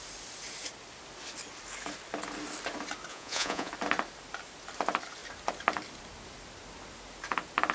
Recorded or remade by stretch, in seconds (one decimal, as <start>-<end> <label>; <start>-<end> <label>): 0.0-3.1 recorded; 3.1-3.7 remade; 3.7-7.7 recorded